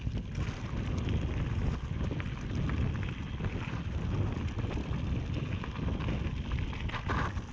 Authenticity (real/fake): real